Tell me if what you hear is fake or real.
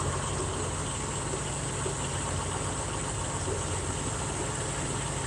real